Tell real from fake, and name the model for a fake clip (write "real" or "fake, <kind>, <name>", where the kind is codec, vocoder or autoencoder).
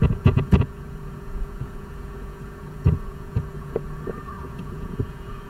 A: fake, vocoder, Vocos